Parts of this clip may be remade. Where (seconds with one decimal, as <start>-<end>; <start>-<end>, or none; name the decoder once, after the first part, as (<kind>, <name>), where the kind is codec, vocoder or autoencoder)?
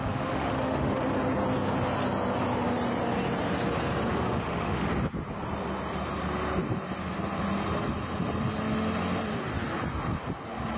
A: 0.0-1.0 (autoencoder, DAC-VAE); 4.1-4.9